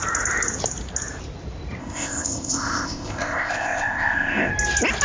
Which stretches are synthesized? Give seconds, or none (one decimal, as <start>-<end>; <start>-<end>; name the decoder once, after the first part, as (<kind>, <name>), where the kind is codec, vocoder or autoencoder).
1.8-4.5 (codec, ZipCodec)